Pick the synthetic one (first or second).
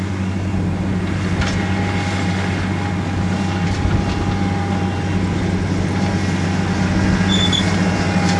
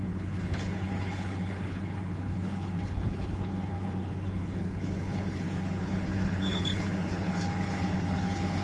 second